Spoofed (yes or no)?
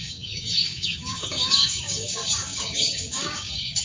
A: yes